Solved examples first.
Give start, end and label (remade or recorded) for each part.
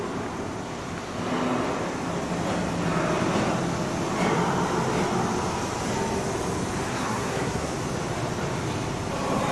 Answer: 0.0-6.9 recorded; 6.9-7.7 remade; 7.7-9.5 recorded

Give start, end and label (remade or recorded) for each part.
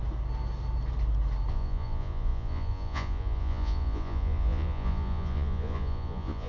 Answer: 0.0-1.5 recorded; 1.5-6.5 remade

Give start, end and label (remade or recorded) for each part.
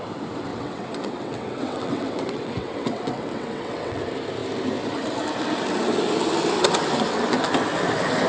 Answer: 0.0-0.5 recorded; 0.5-4.0 remade; 4.0-8.3 recorded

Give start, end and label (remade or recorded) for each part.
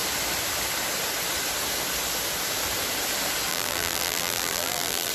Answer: 0.0-3.5 recorded; 3.5-5.1 remade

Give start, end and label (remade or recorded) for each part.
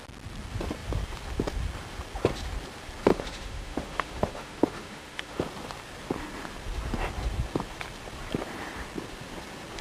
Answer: 0.0-3.1 recorded; 3.1-5.4 remade; 5.4-9.8 recorded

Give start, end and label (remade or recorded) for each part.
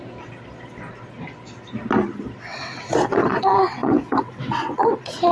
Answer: 0.0-2.5 recorded; 2.5-5.3 remade